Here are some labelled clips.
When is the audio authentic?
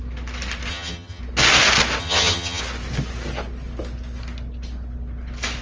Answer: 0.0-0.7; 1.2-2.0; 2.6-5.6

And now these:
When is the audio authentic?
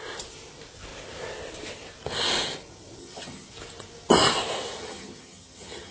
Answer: 0.0-3.0; 3.5-4.8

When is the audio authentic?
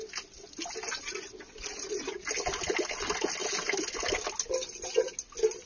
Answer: 0.0-5.7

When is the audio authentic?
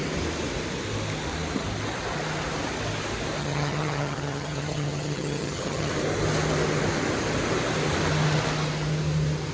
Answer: 0.0-3.4; 5.9-9.5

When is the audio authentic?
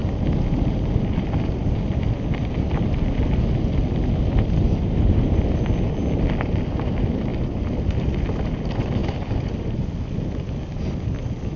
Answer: 0.0-11.6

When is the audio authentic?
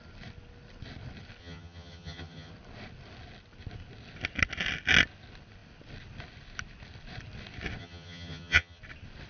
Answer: 0.0-1.4; 2.5-7.8; 8.8-9.3